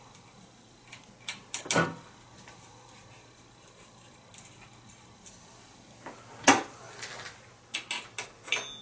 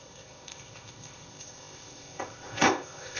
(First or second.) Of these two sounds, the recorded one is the first